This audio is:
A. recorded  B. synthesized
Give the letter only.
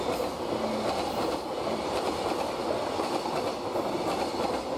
A